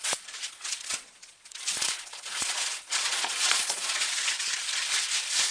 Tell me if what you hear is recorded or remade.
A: remade